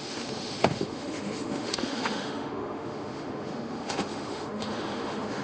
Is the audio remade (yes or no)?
yes